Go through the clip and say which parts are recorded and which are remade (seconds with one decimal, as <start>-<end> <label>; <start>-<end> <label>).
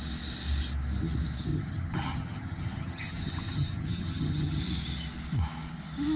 0.0-1.5 recorded; 1.5-4.6 remade; 4.6-6.2 recorded